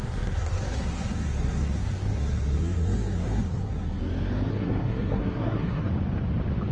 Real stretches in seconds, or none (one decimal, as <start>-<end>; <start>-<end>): 4.0-4.5; 5.9-6.7